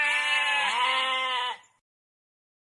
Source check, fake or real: real